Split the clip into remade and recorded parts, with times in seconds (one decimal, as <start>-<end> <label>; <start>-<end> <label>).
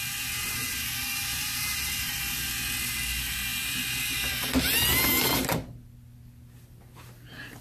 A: 0.0-1.3 recorded; 1.3-2.2 remade; 2.2-7.6 recorded